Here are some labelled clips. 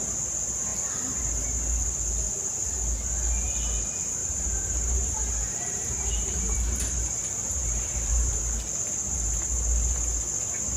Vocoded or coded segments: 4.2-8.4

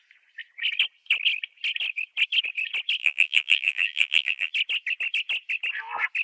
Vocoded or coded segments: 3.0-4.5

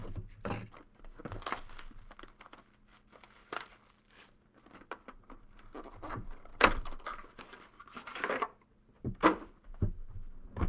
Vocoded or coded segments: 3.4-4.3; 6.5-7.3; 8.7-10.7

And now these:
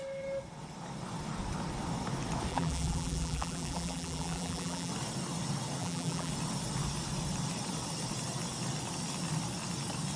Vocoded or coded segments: 2.5-4.9; 5.8-6.3